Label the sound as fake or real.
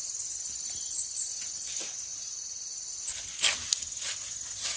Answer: real